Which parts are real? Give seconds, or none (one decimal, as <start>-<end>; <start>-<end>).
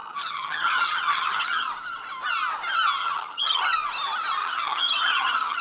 1.7-3.0; 3.6-4.4